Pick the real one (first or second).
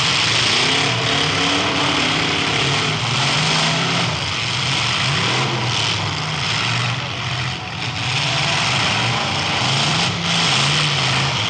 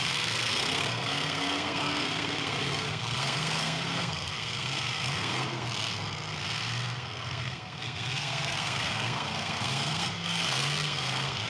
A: first